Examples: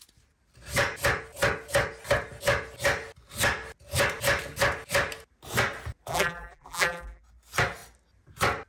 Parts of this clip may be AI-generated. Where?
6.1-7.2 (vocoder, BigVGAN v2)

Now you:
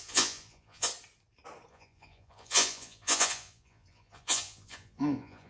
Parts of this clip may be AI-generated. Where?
0.0-0.9 (vocoder, Vocos); 1.7-5.5

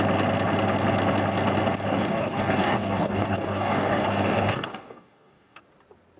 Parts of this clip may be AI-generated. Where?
1.9-5.6 (codec, DAC)